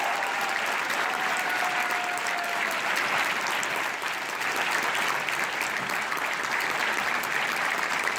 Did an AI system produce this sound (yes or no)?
no